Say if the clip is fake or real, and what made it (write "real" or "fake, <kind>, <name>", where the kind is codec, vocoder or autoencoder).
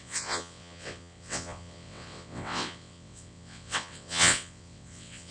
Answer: fake, vocoder, WaveNeXt